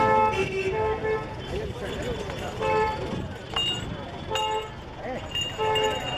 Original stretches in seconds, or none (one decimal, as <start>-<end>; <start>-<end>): 0.0-6.2